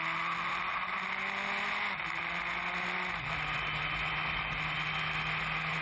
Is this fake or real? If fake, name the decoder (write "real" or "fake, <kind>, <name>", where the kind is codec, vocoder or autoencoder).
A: real